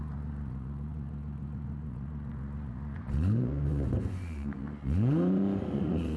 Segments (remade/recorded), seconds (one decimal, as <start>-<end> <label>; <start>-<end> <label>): 0.0-6.2 remade